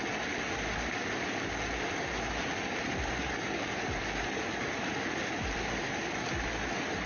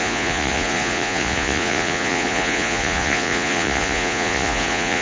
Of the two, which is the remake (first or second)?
second